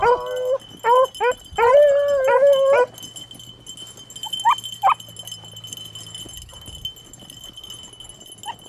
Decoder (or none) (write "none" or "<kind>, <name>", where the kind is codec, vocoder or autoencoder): none